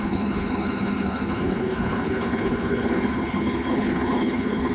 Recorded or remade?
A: remade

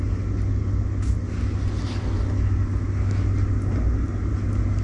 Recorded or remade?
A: recorded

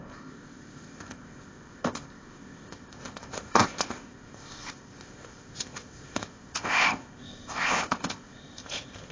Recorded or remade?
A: remade